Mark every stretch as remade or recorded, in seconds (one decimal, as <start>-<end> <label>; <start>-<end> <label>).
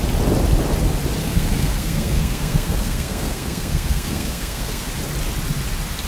0.0-1.2 recorded; 1.2-4.9 remade; 4.9-6.1 recorded